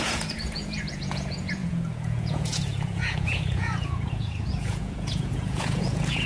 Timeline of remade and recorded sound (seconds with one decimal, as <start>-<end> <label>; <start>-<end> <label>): 0.0-6.3 remade